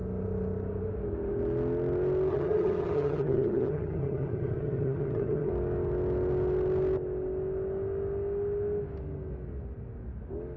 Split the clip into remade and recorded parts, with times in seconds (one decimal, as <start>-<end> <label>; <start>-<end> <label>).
0.0-2.3 recorded; 2.3-5.5 remade; 5.5-10.6 recorded